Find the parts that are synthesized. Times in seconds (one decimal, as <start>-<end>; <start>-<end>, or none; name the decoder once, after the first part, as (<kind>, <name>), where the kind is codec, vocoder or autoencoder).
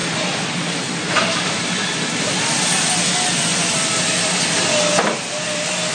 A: 0.0-2.8 (vocoder, BigVGAN v2); 3.5-4.6